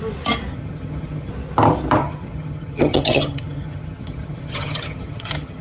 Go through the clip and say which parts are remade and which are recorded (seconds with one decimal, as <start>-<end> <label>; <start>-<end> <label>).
0.0-0.5 recorded; 0.5-1.3 remade; 1.3-2.0 recorded; 2.0-5.6 remade